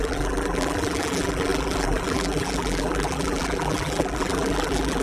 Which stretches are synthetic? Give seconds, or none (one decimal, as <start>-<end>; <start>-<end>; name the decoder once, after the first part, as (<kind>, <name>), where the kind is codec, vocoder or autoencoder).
0.0-5.0 (vocoder, BigVGAN v2)